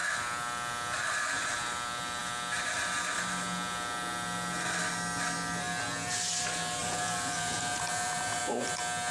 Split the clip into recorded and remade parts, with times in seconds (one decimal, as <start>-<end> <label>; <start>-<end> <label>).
0.0-6.8 recorded; 6.8-8.4 remade; 8.4-9.1 recorded